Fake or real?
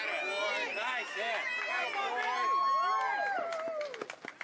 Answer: real